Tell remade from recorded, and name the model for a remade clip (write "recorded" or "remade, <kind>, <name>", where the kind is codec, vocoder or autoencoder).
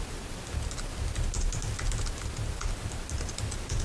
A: recorded